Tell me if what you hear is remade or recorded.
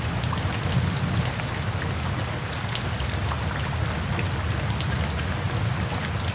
recorded